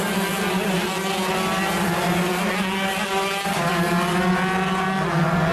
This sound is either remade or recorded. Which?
recorded